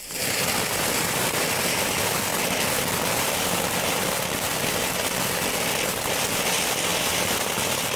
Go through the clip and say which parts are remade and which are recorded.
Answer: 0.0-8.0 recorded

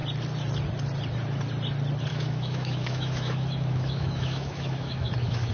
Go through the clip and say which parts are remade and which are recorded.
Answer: 0.0-2.1 recorded; 2.1-5.5 remade

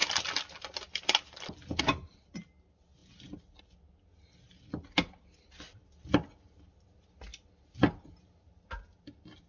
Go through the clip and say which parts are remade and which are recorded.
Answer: 0.0-9.5 recorded

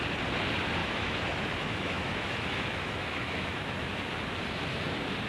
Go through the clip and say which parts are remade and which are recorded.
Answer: 0.0-0.8 recorded; 0.8-4.0 remade; 4.0-5.3 recorded

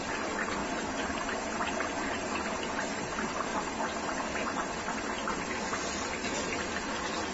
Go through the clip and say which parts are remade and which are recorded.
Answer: 0.0-7.3 recorded

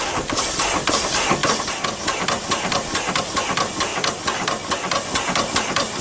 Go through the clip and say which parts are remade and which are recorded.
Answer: 0.0-6.0 recorded

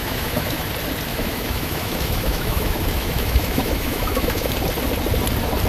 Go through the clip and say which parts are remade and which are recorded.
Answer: 0.0-0.7 remade; 0.7-1.1 recorded; 1.1-4.5 remade; 4.5-5.7 recorded